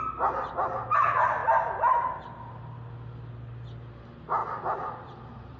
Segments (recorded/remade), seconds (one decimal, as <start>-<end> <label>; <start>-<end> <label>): 0.0-4.4 recorded; 4.4-5.6 remade